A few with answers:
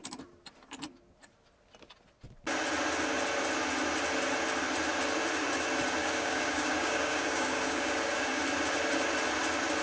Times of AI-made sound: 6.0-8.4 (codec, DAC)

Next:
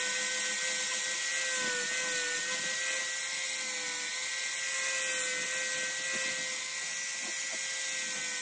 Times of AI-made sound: none

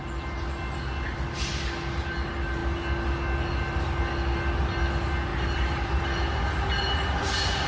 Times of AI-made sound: none

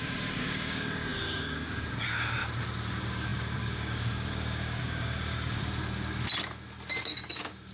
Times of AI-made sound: 0.0-2.4 (codec, DAC); 2.9-5.6; 7.0-7.7

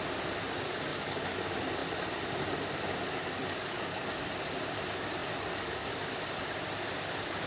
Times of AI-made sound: 0.9-1.4 (codec, DAC); 3.4-4.1; 5.2-5.9

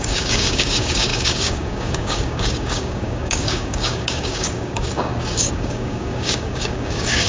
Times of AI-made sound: 0.0-7.3 (codec, DAC)

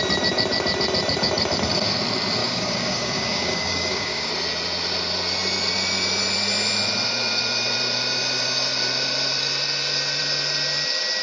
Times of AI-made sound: 2.4-4.3 (codec, DAC)